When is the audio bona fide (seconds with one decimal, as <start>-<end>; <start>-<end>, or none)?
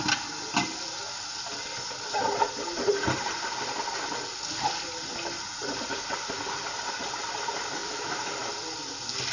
0.0-7.8; 8.3-9.3